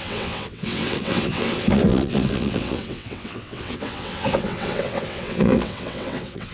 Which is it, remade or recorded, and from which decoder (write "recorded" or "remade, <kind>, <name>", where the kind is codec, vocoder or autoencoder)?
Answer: remade, vocoder, WaveNeXt